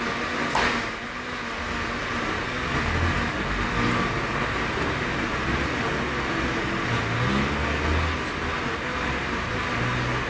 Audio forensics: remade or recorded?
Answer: recorded